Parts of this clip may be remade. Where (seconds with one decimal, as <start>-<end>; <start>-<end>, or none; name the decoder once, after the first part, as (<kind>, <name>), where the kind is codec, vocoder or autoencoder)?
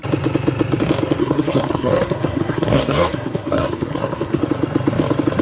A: 1.2-4.4 (codec, SNAC)